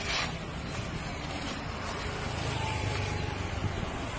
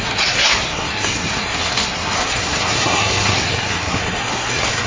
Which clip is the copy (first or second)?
second